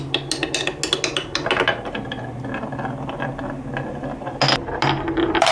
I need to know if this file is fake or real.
real